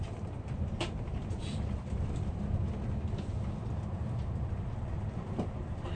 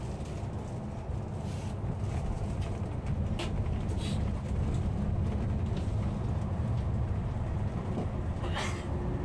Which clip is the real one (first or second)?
second